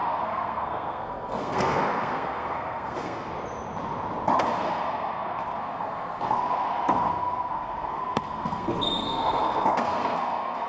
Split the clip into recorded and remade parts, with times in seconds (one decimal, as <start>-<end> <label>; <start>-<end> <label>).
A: 0.0-3.3 remade; 3.3-4.4 recorded; 4.4-10.7 remade